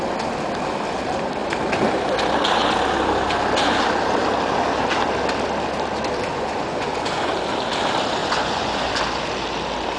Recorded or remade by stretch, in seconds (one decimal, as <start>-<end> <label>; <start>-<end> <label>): 0.0-6.3 recorded; 6.3-7.3 remade; 7.3-8.2 recorded; 8.2-8.9 remade; 8.9-10.0 recorded